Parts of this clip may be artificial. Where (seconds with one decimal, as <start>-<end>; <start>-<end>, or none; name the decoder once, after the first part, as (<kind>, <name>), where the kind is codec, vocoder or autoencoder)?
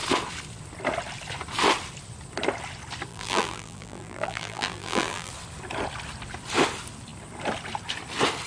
3.1-5.3 (vocoder, BigVGAN v2)